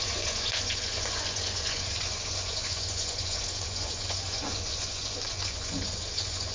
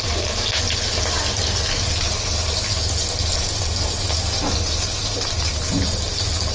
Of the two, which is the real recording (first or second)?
second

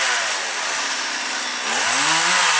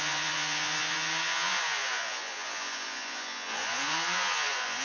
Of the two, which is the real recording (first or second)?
first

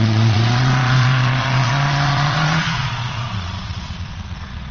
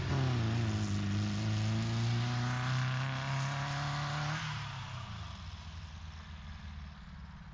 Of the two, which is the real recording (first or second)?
second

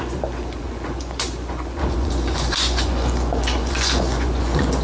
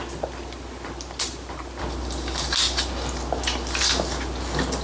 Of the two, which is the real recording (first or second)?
second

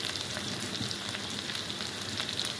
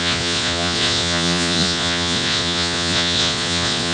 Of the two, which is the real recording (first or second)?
first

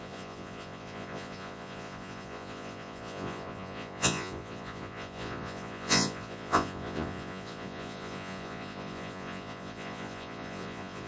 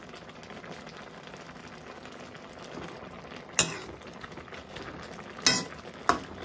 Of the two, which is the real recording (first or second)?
second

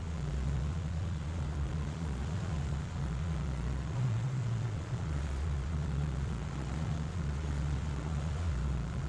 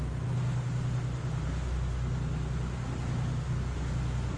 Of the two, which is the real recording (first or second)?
second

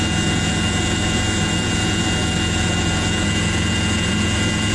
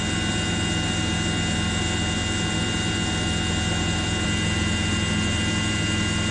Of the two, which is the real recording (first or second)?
second